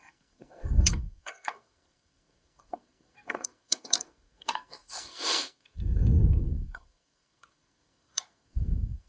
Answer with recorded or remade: remade